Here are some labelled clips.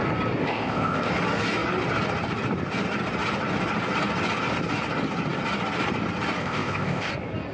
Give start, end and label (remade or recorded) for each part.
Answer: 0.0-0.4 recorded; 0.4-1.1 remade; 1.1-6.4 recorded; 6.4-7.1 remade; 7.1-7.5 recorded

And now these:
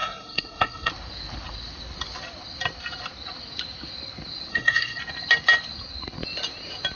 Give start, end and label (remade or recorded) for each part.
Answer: 0.0-0.9 remade; 0.9-4.5 recorded; 4.5-5.0 remade; 5.0-7.0 recorded

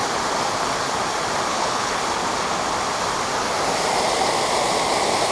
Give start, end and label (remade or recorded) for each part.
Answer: 0.0-1.5 recorded; 1.5-2.0 remade; 2.0-5.3 recorded

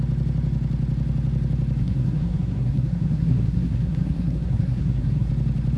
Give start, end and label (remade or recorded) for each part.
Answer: 0.0-1.8 recorded; 1.8-5.3 remade; 5.3-5.8 recorded